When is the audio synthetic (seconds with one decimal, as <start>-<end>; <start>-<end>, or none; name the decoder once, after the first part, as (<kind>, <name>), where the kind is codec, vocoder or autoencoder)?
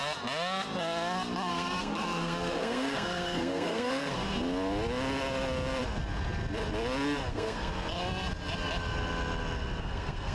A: 1.5-4.2 (codec, SNAC); 7.3-7.7; 9.8-10.3